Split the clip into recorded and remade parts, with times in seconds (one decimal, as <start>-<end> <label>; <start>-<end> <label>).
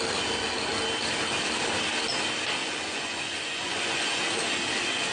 0.0-2.6 recorded; 2.6-4.2 remade; 4.2-5.1 recorded